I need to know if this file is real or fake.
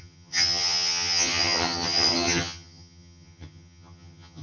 fake